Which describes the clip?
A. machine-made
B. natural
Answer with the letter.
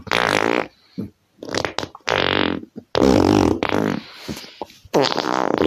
B